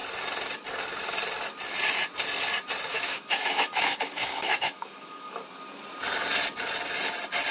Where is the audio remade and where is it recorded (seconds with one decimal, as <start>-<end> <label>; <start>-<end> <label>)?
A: 0.0-2.9 recorded; 2.9-5.4 remade; 5.4-7.5 recorded

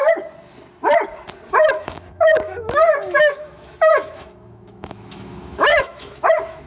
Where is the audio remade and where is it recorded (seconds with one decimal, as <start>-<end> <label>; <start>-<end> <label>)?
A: 0.0-1.5 recorded; 1.5-6.7 remade

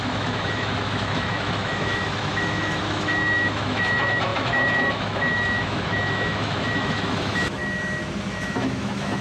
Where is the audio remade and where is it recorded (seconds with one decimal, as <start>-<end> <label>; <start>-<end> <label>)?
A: 0.0-7.6 remade; 7.6-8.4 recorded; 8.4-9.2 remade

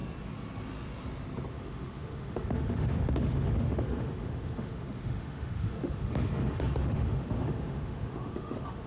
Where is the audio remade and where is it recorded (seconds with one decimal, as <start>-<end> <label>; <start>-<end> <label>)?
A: 0.0-1.5 recorded; 1.5-8.9 remade

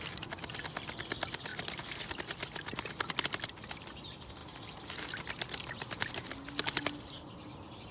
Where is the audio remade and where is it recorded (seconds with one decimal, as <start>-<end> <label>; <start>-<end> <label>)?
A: 0.0-7.9 recorded

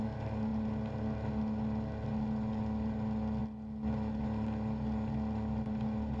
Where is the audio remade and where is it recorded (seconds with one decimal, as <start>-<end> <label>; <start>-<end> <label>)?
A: 0.0-6.2 recorded

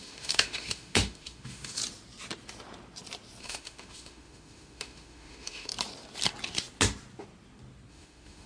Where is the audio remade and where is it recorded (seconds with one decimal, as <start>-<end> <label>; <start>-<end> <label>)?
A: 0.0-1.8 remade; 1.8-3.4 recorded; 3.4-5.7 remade; 5.7-7.9 recorded; 7.9-8.5 remade